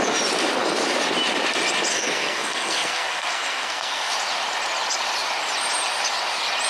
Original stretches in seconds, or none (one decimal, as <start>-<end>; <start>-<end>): 0.0-1.9; 4.1-6.7